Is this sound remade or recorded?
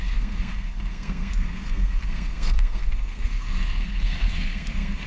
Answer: remade